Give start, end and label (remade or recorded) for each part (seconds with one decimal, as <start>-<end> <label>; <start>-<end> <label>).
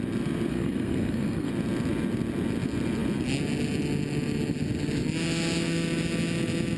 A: 0.0-0.5 recorded; 0.5-1.5 remade; 1.5-6.8 recorded